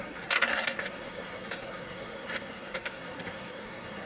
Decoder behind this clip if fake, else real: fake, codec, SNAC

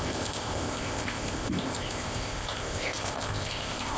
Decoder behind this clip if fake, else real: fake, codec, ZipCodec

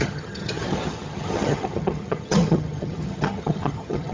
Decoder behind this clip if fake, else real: fake, vocoder, HiFi-GAN